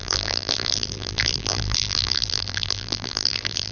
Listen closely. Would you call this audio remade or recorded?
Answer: remade